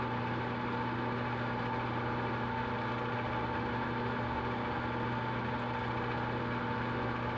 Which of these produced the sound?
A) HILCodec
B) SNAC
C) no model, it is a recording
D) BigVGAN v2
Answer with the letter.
C